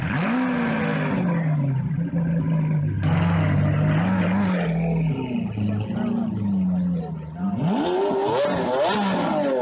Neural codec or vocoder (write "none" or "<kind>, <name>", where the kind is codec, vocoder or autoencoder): none